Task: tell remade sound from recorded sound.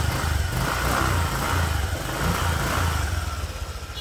recorded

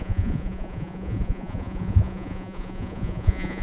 remade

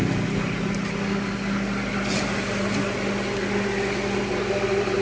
recorded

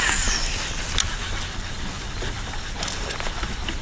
recorded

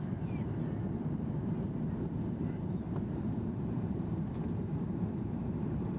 remade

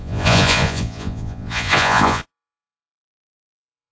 remade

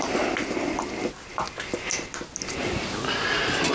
recorded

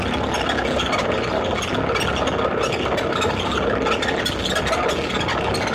recorded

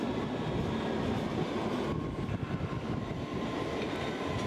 recorded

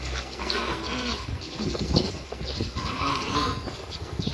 remade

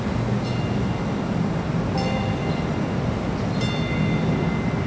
recorded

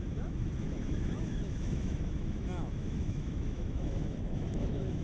remade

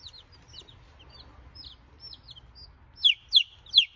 recorded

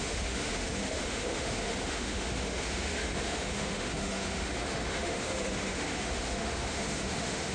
remade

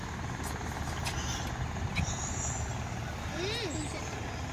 recorded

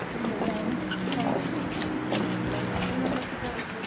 recorded